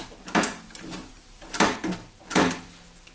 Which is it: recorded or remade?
recorded